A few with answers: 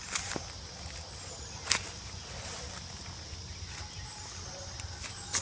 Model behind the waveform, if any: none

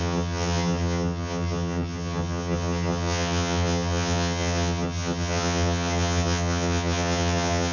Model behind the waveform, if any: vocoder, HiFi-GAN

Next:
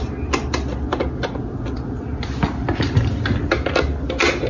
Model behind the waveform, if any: none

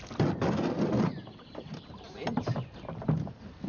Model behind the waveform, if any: none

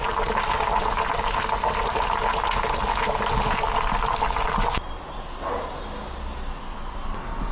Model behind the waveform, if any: none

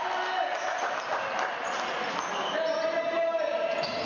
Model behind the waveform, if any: none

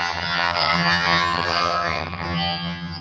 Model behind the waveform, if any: vocoder, HiFi-GAN